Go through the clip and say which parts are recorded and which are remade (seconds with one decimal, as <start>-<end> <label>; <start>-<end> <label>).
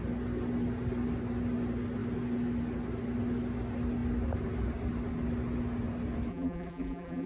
0.0-6.3 recorded; 6.3-7.3 remade